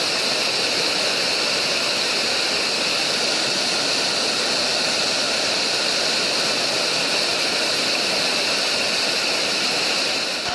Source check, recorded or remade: recorded